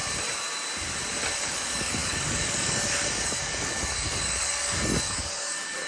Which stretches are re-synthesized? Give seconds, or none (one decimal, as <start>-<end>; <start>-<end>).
1.4-5.9